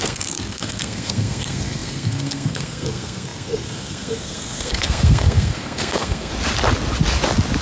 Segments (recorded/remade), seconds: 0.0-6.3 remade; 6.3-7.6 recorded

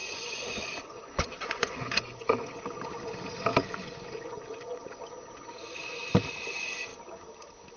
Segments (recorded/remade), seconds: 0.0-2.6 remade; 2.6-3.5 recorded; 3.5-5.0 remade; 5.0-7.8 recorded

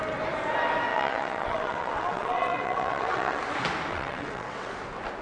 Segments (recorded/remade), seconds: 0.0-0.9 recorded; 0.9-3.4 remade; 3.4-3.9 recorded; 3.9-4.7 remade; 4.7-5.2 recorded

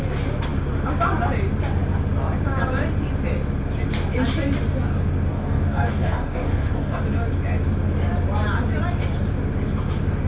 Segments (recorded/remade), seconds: 0.0-5.3 recorded; 5.3-7.0 remade; 7.0-10.3 recorded

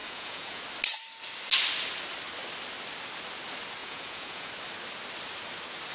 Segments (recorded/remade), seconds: 0.0-0.6 remade; 0.6-3.8 recorded; 3.8-4.5 remade; 4.5-5.9 recorded

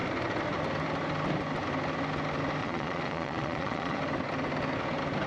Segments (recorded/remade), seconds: 0.0-2.6 recorded; 2.6-4.0 remade; 4.0-5.3 recorded

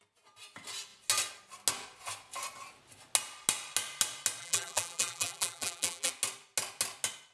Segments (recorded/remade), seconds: 0.0-4.4 recorded; 4.4-6.1 remade; 6.1-7.3 recorded

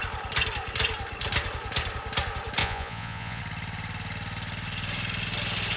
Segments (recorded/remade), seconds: 0.0-2.6 recorded; 2.6-3.4 remade; 3.4-5.8 recorded